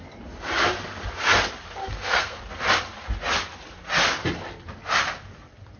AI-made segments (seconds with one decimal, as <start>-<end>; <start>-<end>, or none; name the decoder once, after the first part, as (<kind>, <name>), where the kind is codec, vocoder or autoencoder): 1.8-2.4 (codec, SNAC)